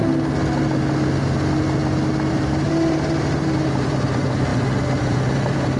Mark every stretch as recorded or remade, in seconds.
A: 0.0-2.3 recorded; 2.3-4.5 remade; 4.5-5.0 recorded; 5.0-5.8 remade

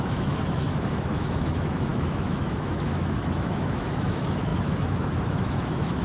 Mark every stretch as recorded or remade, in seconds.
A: 0.0-6.0 remade

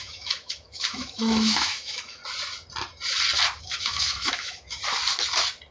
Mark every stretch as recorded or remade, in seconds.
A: 0.0-2.2 remade; 2.2-3.6 recorded; 3.6-4.8 remade; 4.8-5.7 recorded